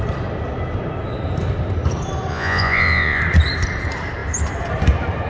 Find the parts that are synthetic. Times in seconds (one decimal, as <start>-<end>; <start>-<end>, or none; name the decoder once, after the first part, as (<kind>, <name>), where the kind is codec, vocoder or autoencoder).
2.3-3.2 (vocoder, Vocos)